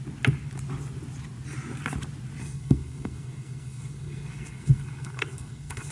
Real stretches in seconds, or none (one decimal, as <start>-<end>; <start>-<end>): 0.0-2.4